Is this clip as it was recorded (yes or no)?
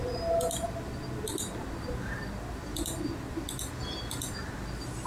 yes